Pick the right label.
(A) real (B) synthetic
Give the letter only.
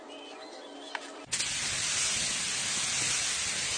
A